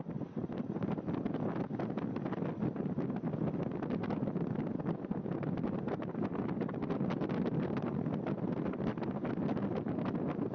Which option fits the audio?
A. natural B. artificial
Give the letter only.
A